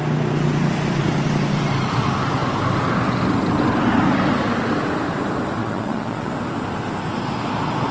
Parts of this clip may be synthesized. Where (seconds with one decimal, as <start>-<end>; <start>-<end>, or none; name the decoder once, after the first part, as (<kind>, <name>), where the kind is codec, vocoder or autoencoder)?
5.6-6.3 (vocoder, Vocos)